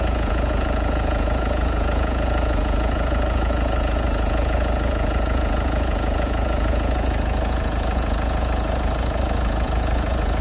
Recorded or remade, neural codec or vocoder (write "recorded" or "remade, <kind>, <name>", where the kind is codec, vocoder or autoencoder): remade, vocoder, Vocos